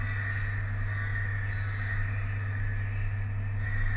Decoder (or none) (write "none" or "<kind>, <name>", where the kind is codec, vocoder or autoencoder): none